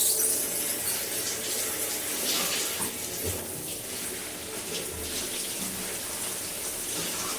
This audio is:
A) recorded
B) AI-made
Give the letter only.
A